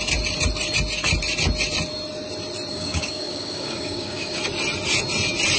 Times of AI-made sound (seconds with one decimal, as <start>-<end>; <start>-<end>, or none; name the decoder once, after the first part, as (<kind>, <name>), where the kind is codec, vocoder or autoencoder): 2.7-4.4 (codec, DAC)